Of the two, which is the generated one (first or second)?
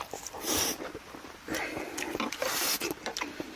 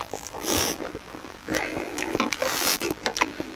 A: second